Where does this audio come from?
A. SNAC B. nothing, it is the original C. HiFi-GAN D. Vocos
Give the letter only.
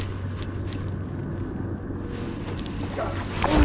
B